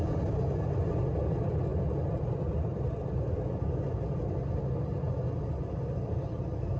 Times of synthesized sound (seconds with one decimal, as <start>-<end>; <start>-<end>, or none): 1.7-3.4